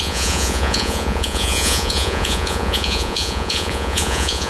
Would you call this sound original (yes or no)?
no